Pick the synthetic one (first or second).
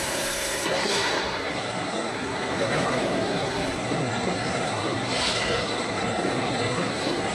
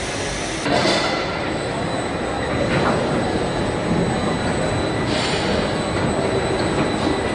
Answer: first